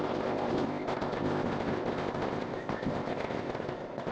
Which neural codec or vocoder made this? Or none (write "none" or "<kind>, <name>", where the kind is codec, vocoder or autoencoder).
codec, ZipCodec